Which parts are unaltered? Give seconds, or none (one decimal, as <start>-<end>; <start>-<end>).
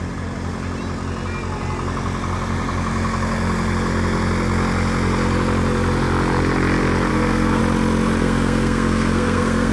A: 0.0-7.1; 7.6-8.2